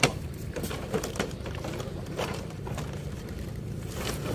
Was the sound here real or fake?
fake